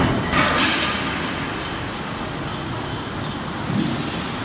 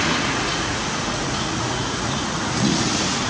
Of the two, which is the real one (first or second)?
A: first